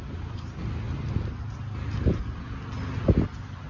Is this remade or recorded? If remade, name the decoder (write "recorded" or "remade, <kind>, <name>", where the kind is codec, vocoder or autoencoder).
recorded